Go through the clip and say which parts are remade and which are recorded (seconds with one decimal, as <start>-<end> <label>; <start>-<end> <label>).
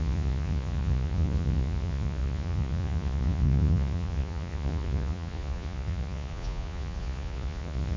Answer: 0.0-8.0 remade